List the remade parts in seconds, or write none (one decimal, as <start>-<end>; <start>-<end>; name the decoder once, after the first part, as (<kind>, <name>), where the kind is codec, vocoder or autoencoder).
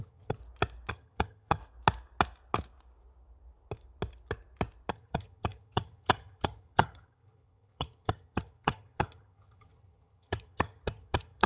0.0-0.4 (vocoder, HiFi-GAN); 0.9-1.6; 4.9-11.5